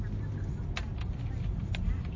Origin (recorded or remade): recorded